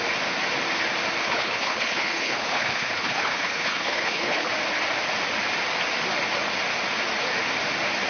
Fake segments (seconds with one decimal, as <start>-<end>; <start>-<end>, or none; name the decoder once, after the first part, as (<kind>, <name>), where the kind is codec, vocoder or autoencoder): 1.2-4.5 (codec, HILCodec)